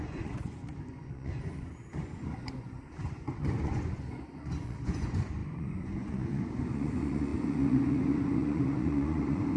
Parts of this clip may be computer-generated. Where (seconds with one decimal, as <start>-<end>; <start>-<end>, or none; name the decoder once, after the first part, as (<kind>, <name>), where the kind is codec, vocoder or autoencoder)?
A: 0.0-9.6 (vocoder, Vocos)

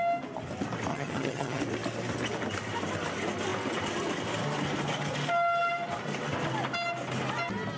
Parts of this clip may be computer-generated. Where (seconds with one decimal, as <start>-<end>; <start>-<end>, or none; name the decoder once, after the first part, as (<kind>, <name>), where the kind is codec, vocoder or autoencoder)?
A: 0.9-1.6 (vocoder, HiFi-GAN)

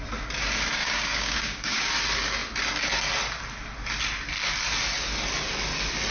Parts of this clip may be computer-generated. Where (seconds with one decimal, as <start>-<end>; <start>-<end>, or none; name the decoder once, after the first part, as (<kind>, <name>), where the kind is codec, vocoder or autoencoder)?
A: 0.8-1.9 (codec, DAC)